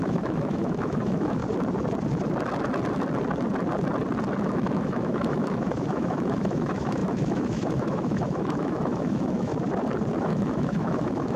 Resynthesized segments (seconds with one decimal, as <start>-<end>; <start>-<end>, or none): 0.0-1.4; 4.4-9.5; 10.2-11.4